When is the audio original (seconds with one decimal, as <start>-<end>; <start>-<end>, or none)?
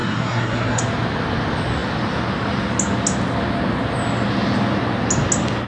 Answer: 0.8-5.7